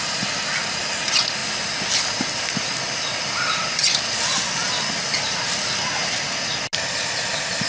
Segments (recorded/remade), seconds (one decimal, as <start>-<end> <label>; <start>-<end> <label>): 0.0-7.7 recorded